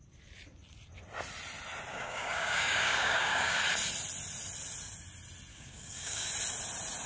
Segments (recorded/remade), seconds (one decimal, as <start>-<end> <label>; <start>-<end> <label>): 0.0-1.9 recorded; 1.9-3.6 remade; 3.6-5.5 recorded; 5.5-6.3 remade; 6.3-7.1 recorded